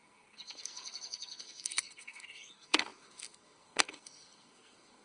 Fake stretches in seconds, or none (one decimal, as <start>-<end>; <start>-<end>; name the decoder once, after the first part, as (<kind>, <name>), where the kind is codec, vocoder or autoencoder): 0.0-5.0 (codec, SNAC)